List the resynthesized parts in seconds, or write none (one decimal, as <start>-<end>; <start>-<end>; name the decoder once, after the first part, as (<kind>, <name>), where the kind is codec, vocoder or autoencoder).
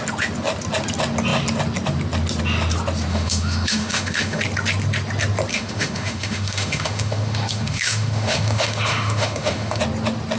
3.1-4.4 (autoencoder, DAC-VAE); 5.5-9.8